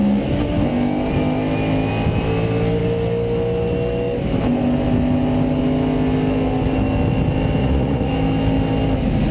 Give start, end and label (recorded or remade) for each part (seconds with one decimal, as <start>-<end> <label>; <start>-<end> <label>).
0.0-7.6 recorded; 7.6-8.1 remade; 8.1-9.3 recorded